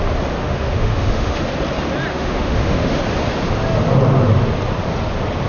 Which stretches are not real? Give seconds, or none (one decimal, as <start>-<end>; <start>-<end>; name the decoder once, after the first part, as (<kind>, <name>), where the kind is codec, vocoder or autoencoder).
0.4-1.4 (autoencoder, DAC-VAE); 2.1-3.0